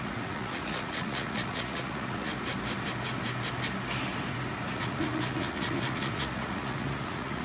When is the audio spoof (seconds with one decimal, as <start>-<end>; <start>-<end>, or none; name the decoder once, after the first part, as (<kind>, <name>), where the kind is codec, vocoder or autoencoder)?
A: 0.0-2.3 (vocoder, Vocos); 4.7-7.4